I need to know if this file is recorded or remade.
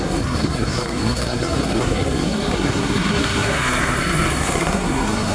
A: remade